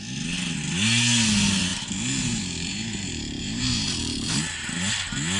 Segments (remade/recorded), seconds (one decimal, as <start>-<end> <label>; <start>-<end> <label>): 0.0-1.7 recorded; 1.7-4.9 remade; 4.9-5.4 recorded